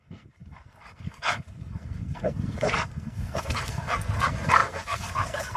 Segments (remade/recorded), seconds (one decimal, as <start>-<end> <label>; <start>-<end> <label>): 0.0-5.6 remade